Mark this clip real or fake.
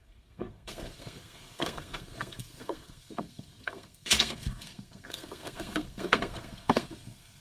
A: fake